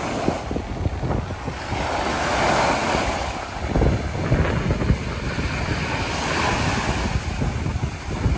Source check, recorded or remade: recorded